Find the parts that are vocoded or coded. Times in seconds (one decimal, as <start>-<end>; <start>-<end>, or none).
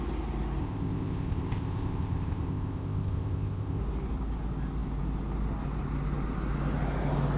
0.6-3.8